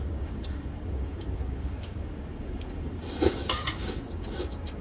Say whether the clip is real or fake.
fake